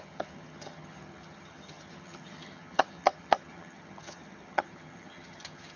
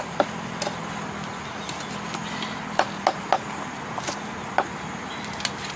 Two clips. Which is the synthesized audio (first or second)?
first